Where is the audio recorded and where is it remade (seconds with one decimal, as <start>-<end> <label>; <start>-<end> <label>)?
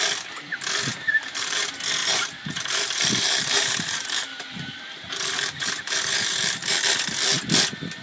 0.0-0.9 recorded; 0.9-1.6 remade; 1.6-2.0 recorded; 2.0-6.8 remade; 6.8-8.0 recorded